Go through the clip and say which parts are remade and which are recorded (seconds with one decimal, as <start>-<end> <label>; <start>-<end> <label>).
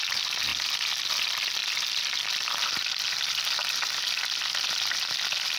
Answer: 0.0-1.6 recorded; 1.6-2.8 remade; 2.8-5.6 recorded